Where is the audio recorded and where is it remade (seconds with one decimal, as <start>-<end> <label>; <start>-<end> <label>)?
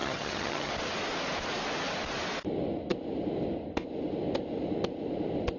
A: 0.0-0.7 remade; 0.7-5.6 recorded